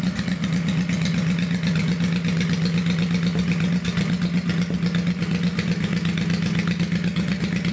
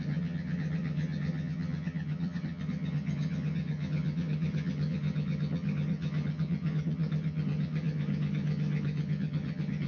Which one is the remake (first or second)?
second